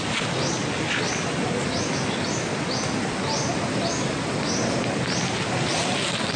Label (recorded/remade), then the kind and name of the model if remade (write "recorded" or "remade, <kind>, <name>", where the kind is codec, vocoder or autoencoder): recorded